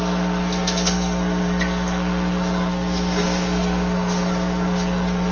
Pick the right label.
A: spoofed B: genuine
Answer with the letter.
A